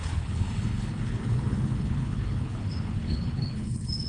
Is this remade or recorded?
remade